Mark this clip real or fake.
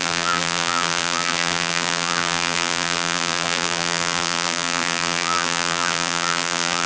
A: fake